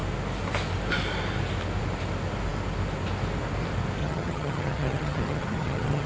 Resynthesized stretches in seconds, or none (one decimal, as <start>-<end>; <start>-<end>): 4.0-6.1

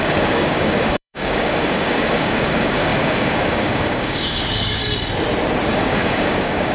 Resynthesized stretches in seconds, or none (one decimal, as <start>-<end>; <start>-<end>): 0.0-4.8; 5.7-6.7

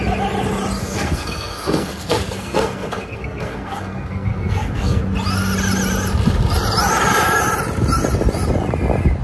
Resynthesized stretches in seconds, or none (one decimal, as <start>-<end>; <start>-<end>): 0.8-5.0